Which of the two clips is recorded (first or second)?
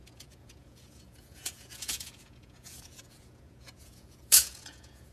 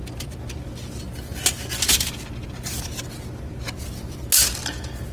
second